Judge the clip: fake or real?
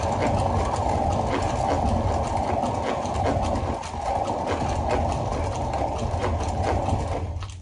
real